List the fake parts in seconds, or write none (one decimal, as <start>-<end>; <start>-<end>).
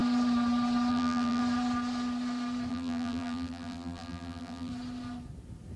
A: 0.9-1.4; 2.7-4.7